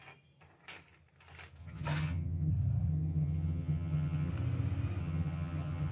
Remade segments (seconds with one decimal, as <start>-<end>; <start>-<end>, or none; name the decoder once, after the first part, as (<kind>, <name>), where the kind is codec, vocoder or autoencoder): 1.6-2.5 (vocoder, HiFi-GAN); 2.9-4.3; 5.0-5.9